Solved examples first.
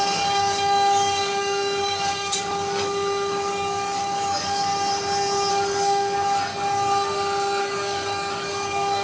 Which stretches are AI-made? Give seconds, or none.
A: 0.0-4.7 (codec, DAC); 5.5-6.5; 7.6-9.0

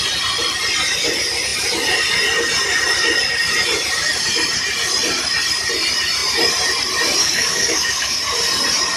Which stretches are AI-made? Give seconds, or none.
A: 7.2-8.2 (codec, DAC)

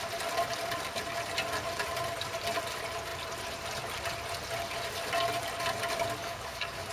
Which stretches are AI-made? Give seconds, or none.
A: 6.2-6.9 (codec, DAC)

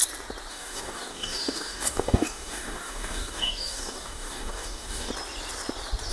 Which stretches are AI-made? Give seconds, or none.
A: 0.5-5.1 (codec, DAC)

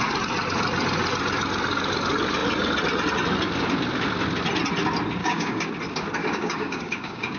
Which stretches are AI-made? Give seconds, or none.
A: 5.2-5.7 (codec, DAC); 6.2-7.4

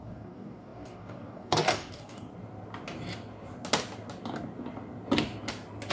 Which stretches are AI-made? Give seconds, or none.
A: 0.0-2.3 (codec, DAC)

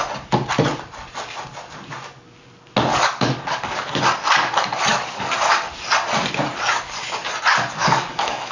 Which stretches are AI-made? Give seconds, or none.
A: 2.9-4.0 (codec, DAC); 4.9-5.5; 7.8-8.5

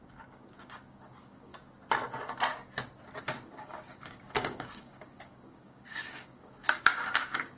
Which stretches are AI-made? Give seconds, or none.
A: 0.0-1.5 (codec, DAC); 3.2-7.6